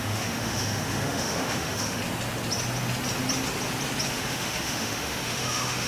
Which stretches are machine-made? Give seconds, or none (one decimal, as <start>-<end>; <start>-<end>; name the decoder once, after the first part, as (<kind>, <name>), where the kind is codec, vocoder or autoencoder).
0.0-2.0 (autoencoder, DAC-VAE); 4.1-5.9